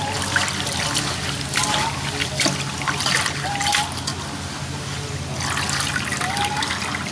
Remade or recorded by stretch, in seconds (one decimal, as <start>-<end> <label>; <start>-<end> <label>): 0.0-7.1 recorded

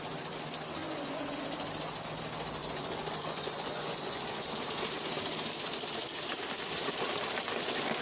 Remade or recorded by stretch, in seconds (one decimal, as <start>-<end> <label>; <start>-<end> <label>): 0.0-0.8 recorded; 0.8-1.4 remade; 1.4-2.6 recorded; 2.6-4.5 remade; 4.5-8.0 recorded

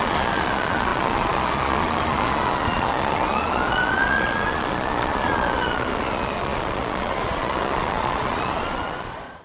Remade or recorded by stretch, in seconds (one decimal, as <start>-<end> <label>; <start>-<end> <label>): 0.0-9.4 remade

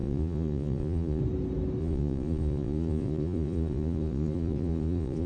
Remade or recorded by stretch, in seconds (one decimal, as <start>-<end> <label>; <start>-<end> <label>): 0.0-1.2 remade; 1.2-1.8 recorded; 1.8-5.3 remade

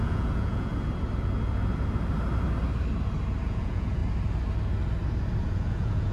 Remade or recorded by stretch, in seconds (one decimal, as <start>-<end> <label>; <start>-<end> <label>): 0.0-0.7 remade; 0.7-3.5 recorded; 3.5-4.0 remade; 4.0-5.4 recorded; 5.4-6.1 remade

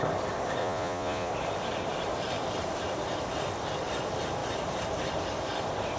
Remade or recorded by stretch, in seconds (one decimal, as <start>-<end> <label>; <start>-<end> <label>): 0.0-0.6 recorded; 0.6-1.3 remade; 1.3-6.0 recorded